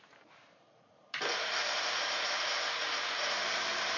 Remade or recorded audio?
remade